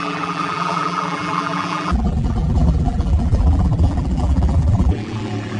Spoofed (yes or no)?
yes